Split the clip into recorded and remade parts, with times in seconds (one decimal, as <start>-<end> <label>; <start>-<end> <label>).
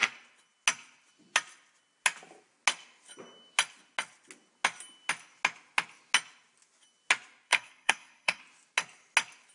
0.0-7.5 recorded; 7.5-8.4 remade; 8.4-9.5 recorded